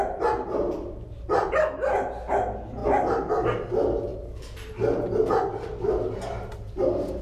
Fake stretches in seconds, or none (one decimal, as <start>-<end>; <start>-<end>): 4.1-4.7